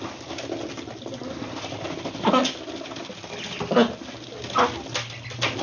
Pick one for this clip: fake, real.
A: real